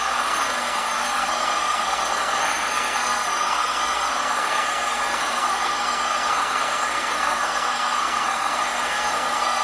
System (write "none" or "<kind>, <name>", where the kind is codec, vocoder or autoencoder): codec, SNAC